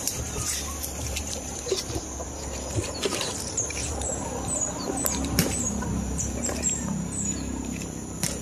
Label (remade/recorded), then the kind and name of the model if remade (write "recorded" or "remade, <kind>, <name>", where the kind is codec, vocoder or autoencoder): remade, vocoder, BigVGAN v2